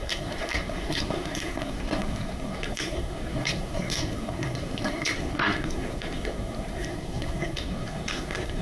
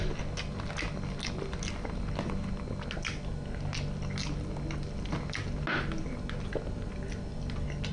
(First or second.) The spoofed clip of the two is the first